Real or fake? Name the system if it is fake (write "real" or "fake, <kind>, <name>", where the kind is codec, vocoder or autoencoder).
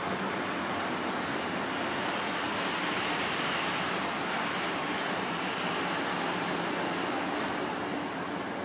real